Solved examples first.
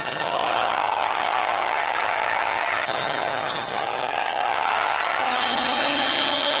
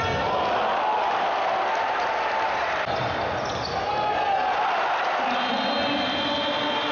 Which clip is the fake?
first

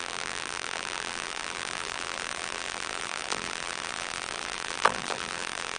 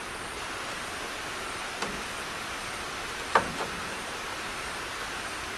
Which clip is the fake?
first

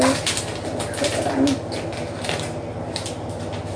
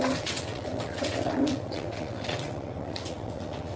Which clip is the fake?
second